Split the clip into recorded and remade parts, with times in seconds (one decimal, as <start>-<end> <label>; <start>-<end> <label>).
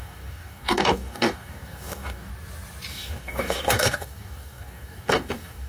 0.0-2.3 remade; 2.3-2.9 recorded; 2.9-5.7 remade